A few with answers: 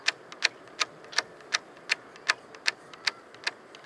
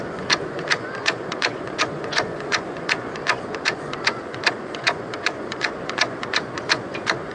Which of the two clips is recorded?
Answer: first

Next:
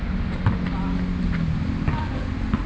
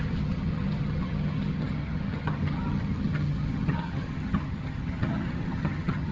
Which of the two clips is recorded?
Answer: first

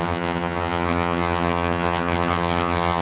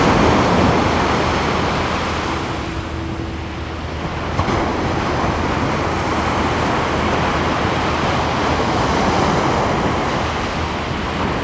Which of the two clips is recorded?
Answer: second